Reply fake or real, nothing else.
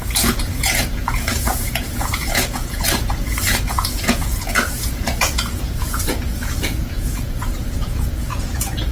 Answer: fake